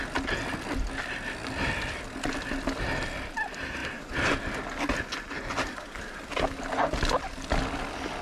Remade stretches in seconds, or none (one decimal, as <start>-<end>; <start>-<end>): none